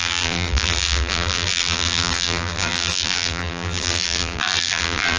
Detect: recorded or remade remade